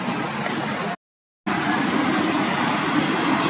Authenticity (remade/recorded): recorded